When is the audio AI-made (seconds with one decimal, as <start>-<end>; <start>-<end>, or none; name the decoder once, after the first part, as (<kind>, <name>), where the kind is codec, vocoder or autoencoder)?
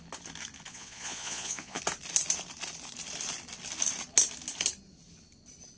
0.7-1.8 (vocoder, Vocos)